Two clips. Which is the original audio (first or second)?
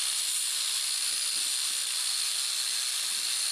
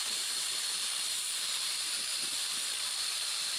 first